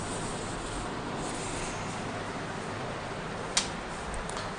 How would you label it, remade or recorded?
recorded